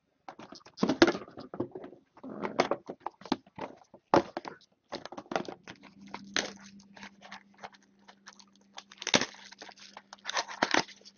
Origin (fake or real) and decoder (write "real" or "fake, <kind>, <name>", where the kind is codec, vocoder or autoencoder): real